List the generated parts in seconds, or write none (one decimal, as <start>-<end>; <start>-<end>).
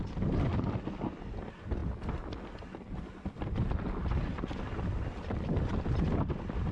none